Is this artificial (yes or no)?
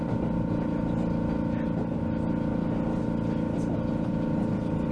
no